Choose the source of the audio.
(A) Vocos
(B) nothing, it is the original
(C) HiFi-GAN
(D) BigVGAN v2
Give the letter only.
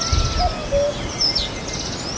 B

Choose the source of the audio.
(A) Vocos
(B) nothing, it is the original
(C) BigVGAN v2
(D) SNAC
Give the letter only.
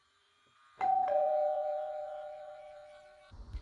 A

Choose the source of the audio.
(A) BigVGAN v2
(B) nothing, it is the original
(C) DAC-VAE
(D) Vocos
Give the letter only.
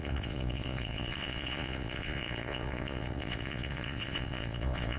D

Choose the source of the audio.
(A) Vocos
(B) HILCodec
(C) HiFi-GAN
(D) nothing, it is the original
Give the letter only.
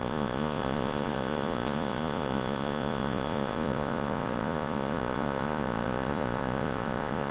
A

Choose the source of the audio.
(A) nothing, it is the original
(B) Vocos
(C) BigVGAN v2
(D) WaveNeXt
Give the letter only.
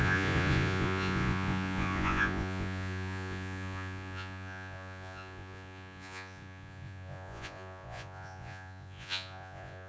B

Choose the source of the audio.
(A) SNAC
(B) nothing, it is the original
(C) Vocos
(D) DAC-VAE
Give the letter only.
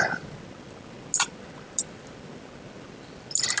B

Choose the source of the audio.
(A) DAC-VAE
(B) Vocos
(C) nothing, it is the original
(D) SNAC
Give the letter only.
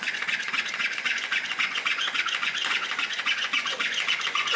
B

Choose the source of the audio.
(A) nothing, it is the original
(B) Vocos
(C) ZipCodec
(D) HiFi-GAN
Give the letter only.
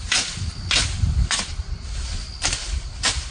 A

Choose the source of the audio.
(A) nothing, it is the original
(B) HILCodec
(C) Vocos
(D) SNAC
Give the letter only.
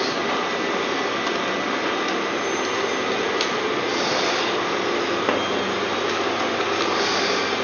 A